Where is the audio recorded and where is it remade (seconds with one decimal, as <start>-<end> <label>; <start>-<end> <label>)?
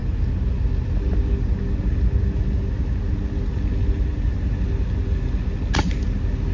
0.0-6.5 recorded